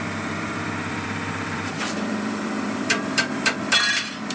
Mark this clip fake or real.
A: fake